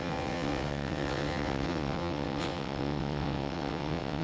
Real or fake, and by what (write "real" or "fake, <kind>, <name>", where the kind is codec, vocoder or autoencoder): fake, vocoder, WaveNeXt